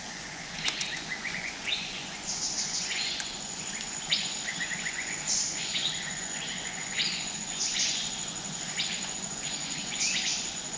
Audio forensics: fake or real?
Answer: fake